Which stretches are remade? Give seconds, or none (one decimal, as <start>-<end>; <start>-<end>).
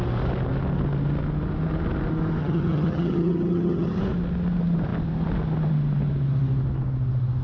2.4-4.0